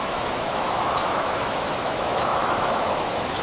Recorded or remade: remade